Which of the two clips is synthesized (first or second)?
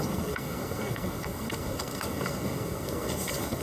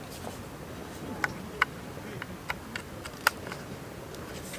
first